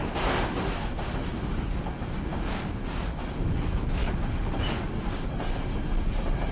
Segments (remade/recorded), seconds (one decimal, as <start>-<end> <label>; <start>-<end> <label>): 0.0-6.5 recorded